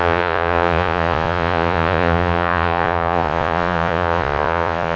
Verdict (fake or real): fake